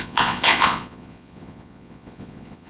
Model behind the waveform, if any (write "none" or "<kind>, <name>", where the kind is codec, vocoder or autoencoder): vocoder, Vocos